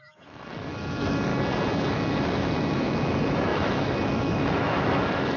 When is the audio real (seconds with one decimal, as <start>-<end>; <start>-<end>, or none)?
1.3-1.9